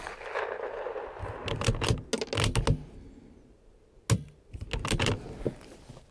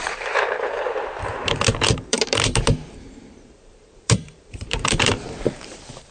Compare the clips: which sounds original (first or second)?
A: first